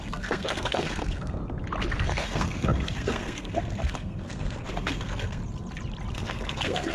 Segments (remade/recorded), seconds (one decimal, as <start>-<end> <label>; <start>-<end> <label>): 0.0-1.4 remade; 1.4-2.0 recorded; 2.0-5.4 remade; 5.4-6.1 recorded; 6.1-6.9 remade